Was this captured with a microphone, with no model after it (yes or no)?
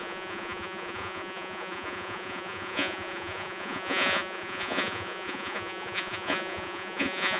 no